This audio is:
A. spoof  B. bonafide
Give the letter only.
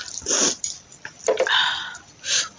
B